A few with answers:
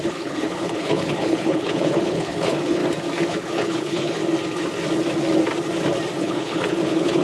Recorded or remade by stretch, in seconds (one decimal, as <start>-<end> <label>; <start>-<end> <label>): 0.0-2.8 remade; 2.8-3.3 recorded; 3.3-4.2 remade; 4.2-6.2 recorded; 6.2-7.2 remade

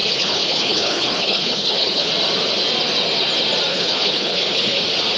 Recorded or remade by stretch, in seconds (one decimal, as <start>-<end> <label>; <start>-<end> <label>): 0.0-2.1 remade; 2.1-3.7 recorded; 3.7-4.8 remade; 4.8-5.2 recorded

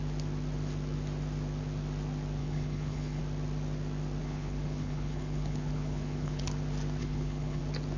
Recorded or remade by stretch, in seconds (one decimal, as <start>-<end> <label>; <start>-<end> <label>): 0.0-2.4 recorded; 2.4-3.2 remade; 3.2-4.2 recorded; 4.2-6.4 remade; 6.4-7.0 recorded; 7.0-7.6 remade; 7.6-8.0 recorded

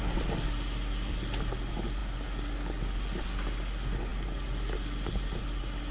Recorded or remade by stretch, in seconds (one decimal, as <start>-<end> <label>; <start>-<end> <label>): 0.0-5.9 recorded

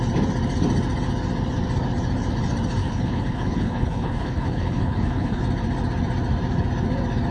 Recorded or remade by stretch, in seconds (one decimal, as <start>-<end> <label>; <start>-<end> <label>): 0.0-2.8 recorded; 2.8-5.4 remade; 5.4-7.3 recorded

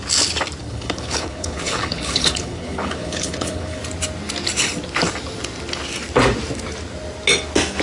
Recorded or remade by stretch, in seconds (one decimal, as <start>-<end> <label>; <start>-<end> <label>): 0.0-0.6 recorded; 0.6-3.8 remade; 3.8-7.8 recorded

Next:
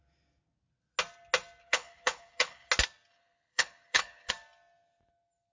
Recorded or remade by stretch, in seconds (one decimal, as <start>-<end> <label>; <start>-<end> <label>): 0.0-1.6 recorded; 1.6-2.7 remade; 2.7-3.1 recorded; 3.1-4.3 remade; 4.3-5.5 recorded

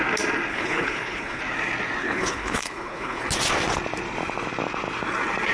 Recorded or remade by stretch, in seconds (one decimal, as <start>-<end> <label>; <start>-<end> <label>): 0.0-0.5 recorded; 0.5-1.4 remade; 1.4-2.0 recorded; 2.0-3.2 remade; 3.2-5.5 recorded